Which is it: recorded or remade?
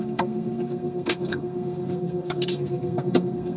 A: remade